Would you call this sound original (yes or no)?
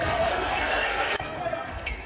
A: no